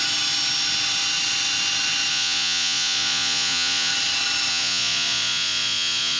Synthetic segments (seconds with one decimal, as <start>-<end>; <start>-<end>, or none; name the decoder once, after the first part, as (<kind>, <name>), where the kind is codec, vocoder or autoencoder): 2.1-3.9 (vocoder, Vocos); 4.5-6.2